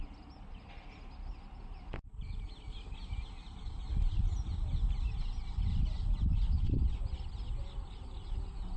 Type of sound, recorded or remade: recorded